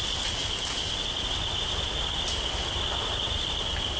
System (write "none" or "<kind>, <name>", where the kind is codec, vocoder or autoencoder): none